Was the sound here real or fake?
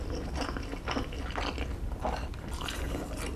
real